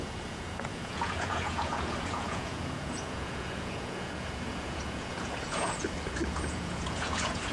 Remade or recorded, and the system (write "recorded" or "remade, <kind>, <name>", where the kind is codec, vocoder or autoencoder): remade, vocoder, Vocos